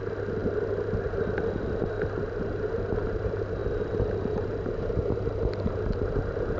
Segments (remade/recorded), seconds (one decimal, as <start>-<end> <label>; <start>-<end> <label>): 0.0-6.6 recorded